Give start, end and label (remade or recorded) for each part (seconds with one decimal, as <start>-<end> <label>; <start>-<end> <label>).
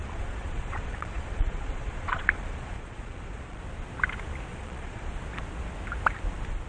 0.0-3.6 remade; 3.6-4.5 recorded; 4.5-5.1 remade; 5.1-6.7 recorded